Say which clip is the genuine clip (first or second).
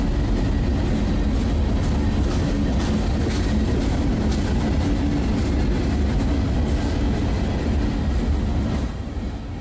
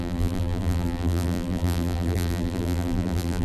first